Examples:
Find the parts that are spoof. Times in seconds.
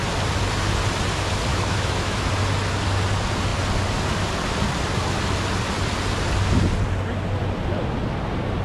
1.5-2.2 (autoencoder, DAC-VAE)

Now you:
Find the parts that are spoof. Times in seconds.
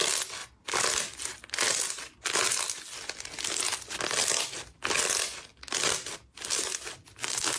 none